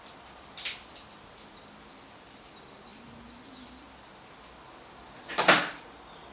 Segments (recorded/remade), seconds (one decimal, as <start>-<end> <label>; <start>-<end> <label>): 0.0-6.3 recorded